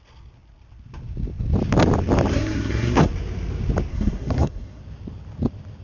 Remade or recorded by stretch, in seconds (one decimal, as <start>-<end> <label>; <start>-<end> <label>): 0.0-2.3 recorded; 2.3-3.1 remade; 3.1-3.9 recorded; 3.9-4.8 remade; 4.8-5.8 recorded